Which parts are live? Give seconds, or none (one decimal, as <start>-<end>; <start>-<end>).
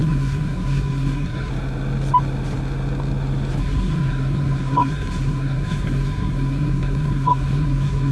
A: 1.5-3.6